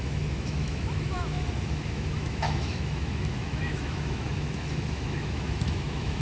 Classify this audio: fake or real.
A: fake